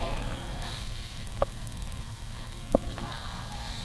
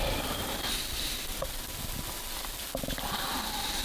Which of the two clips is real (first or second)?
second